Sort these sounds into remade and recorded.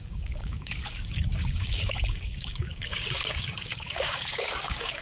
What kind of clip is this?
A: remade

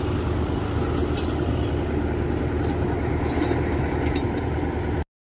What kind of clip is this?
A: recorded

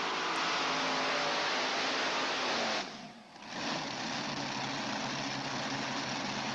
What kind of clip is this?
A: recorded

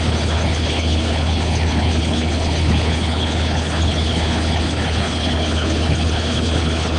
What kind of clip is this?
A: remade